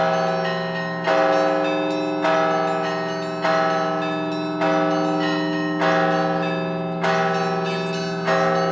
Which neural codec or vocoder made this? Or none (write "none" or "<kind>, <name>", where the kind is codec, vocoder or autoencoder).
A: none